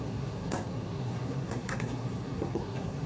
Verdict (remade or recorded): remade